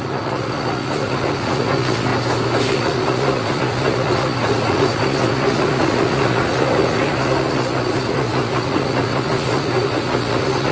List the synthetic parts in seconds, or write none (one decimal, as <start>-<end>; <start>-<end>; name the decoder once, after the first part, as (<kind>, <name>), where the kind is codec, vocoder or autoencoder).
0.0-2.1 (vocoder, Vocos); 2.7-10.7